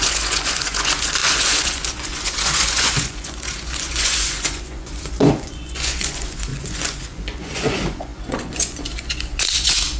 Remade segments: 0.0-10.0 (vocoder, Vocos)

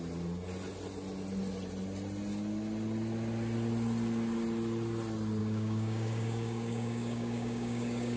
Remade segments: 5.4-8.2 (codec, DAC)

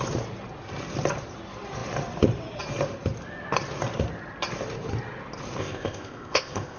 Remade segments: 5.6-6.8 (codec, ZipCodec)

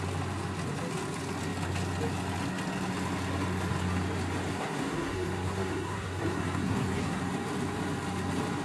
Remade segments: 4.5-7.2 (codec, SNAC)

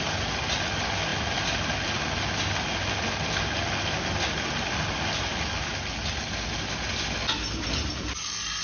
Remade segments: none

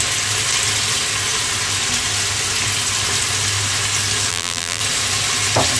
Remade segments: 4.3-4.8 (vocoder, BigVGAN v2)